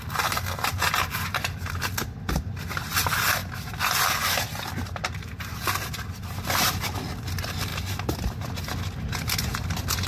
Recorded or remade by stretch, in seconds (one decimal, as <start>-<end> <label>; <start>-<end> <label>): 0.0-10.1 recorded